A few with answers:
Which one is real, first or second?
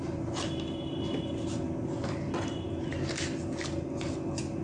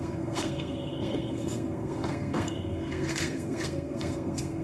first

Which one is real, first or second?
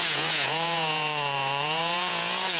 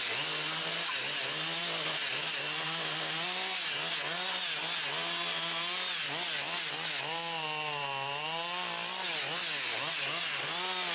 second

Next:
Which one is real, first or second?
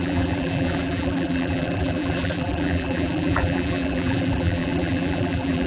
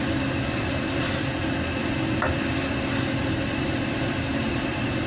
second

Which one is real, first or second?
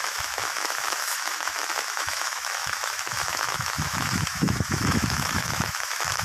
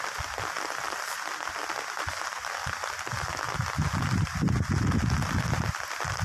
second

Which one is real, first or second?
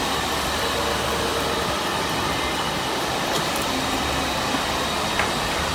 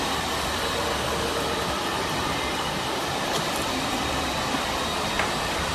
first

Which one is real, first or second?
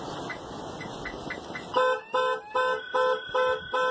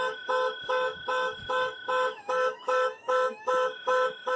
first